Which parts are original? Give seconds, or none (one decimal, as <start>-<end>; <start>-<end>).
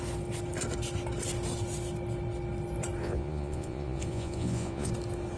0.0-3.0; 4.9-5.4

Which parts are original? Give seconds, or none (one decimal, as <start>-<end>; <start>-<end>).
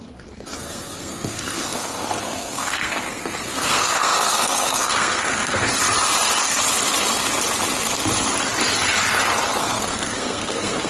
5.7-9.6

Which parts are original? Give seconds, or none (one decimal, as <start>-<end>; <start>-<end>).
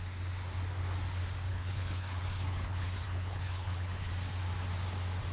0.0-1.5; 4.1-5.3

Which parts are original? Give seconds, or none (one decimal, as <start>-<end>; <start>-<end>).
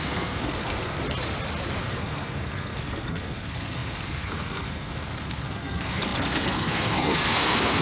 1.0-1.8